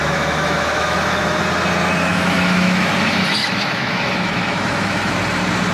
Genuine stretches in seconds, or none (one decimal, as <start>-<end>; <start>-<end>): 1.4-2.1; 2.9-3.4; 5.2-5.7